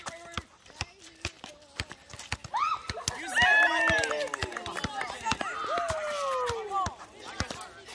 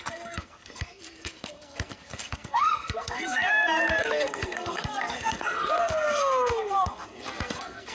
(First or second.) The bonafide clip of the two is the first